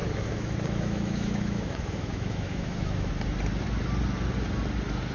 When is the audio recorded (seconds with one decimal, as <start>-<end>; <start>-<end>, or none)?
3.1-5.1